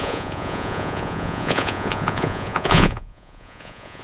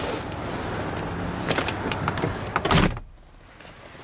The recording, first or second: second